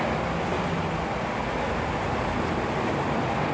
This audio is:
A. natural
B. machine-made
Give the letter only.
A